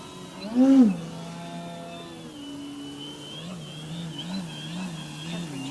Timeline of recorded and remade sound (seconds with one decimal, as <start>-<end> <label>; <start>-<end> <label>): 0.0-5.7 recorded